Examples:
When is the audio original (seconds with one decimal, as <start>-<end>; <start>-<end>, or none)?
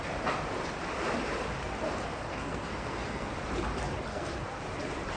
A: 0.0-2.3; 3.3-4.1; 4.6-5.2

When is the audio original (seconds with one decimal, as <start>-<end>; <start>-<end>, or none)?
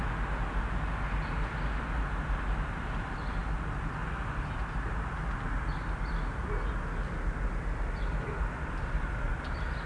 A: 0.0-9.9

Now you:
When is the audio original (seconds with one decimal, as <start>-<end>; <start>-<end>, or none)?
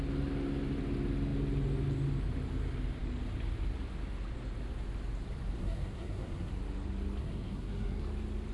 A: 0.0-5.6; 6.5-7.2; 8.0-8.5